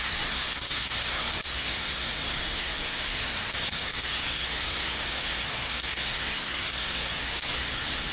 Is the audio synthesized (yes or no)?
yes